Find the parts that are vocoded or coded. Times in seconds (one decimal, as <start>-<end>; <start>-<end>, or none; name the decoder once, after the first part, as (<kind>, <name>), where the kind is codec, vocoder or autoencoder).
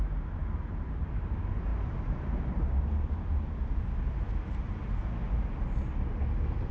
none